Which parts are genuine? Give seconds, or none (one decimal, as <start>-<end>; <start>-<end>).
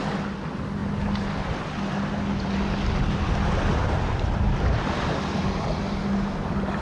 0.0-6.8